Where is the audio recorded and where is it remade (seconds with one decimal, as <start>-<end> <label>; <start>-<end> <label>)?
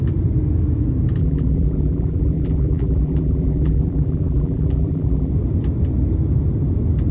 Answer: 0.0-1.2 recorded; 1.2-5.3 remade; 5.3-7.1 recorded